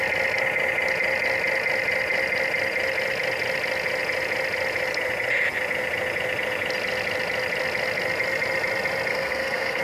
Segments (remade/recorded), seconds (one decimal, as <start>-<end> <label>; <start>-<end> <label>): 0.0-9.1 recorded; 9.1-9.8 remade